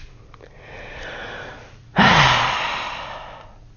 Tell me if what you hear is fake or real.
real